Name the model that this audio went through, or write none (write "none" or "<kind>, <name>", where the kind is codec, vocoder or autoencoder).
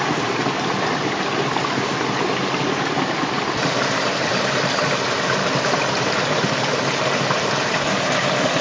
none